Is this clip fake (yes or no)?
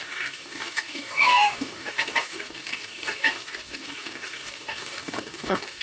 yes